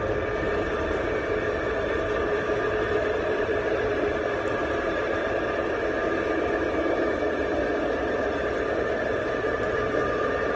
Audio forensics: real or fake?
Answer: fake